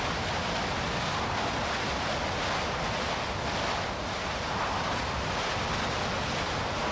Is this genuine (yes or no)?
yes